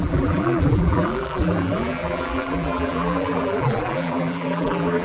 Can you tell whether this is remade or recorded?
remade